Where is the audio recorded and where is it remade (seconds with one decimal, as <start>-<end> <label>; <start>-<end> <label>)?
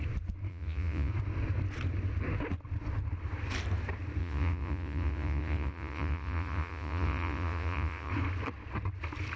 0.0-0.5 recorded; 0.5-1.1 remade; 1.1-4.2 recorded; 4.2-8.1 remade; 8.1-9.4 recorded